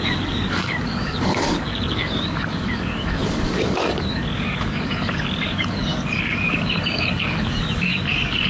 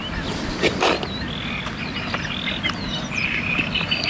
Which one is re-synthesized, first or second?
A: first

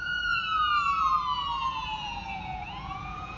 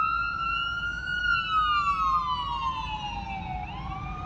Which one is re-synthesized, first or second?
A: first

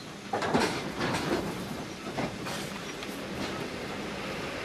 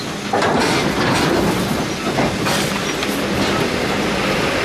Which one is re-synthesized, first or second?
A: first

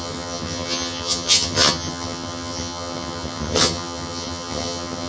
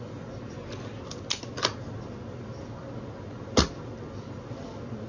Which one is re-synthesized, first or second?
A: first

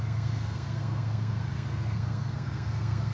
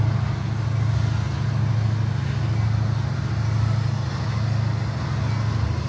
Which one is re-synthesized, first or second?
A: first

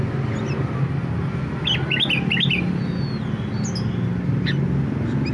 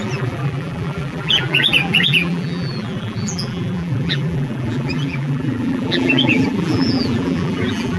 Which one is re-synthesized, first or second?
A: second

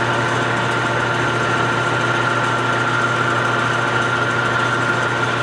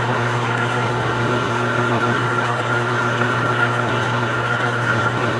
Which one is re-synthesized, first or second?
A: second